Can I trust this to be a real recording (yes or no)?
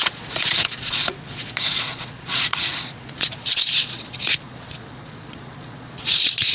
no